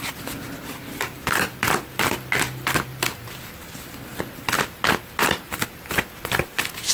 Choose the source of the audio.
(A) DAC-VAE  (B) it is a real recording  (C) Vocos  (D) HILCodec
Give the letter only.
B